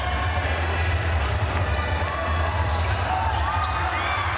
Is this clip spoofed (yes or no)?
no